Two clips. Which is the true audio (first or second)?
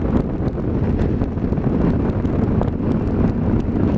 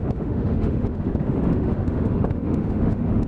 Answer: first